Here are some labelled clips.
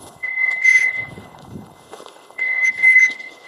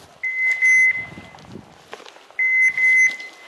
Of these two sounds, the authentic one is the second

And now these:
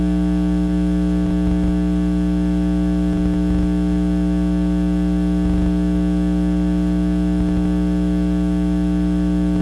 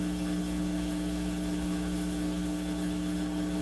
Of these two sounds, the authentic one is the first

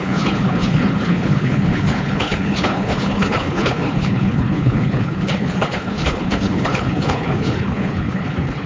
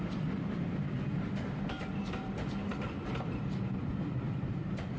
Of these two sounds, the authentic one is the second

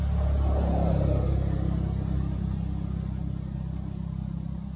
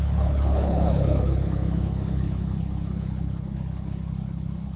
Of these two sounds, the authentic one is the first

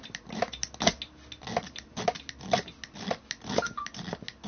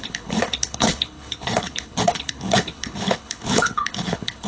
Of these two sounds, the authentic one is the first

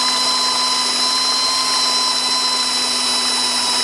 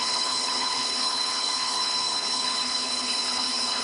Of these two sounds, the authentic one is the first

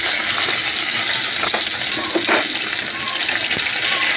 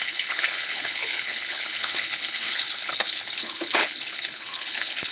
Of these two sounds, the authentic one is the first